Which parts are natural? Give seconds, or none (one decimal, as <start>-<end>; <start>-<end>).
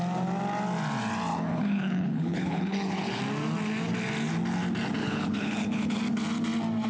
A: 0.0-1.3; 3.2-5.0; 6.0-6.9